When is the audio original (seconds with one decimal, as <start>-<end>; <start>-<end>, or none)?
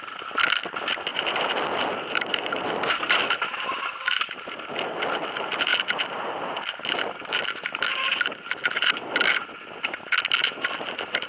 0.0-1.1; 3.2-11.3